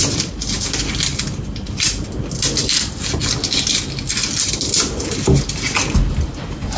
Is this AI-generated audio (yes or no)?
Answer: no